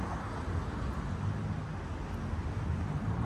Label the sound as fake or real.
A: real